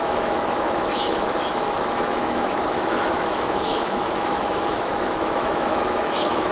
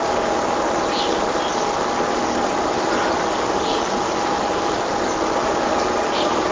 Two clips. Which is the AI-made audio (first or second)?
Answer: first